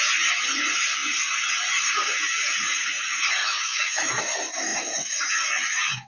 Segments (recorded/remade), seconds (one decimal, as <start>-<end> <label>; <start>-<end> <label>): 0.0-3.4 recorded; 3.4-4.2 remade; 4.2-6.1 recorded